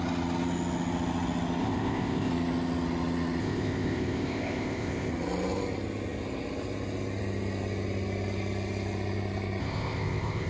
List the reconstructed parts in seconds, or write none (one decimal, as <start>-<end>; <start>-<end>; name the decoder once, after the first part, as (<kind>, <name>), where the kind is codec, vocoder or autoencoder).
1.6-2.3 (codec, ZipCodec); 3.4-5.1; 9.6-10.5